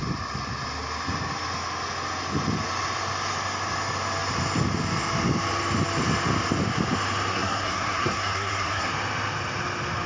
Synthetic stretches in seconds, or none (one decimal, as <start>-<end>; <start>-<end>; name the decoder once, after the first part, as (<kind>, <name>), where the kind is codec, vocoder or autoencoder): 7.3-8.9 (codec, SNAC)